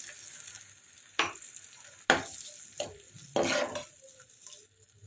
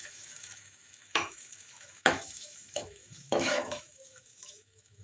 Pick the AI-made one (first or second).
second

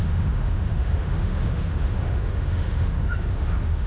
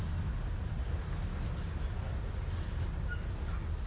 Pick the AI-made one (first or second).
first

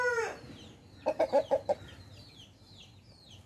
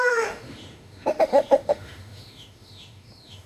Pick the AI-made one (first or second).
second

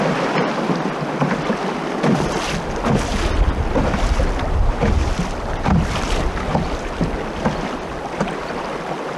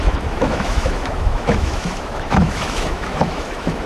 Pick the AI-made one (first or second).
second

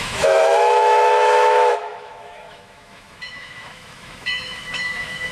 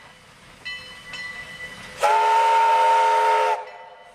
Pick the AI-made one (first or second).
first